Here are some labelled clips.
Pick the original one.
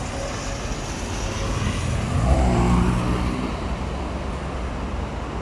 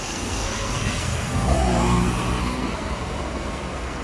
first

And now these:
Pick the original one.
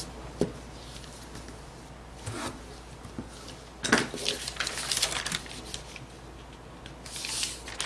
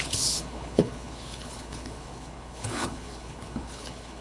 first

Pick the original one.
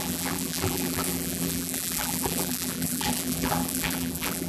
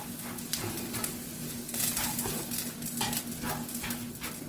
second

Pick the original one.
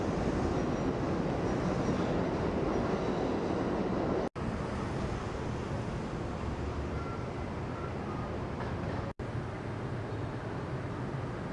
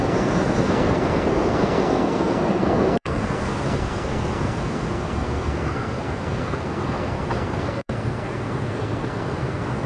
first